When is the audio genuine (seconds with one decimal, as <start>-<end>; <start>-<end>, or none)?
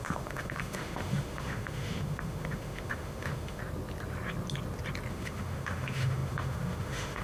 3.6-5.1